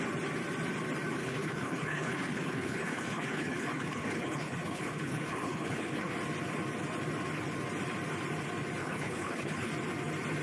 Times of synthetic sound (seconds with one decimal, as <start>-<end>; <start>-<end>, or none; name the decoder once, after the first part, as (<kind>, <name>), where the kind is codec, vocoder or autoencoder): 1.2-6.1 (codec, HILCodec); 8.8-9.7